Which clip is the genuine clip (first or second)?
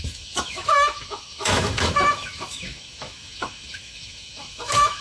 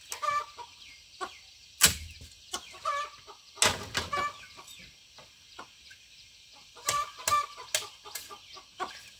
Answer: second